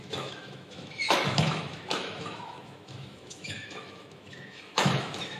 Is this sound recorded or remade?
remade